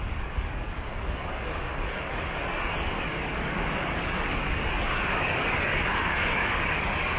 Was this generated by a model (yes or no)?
yes